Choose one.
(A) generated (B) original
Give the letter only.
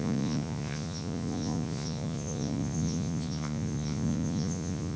A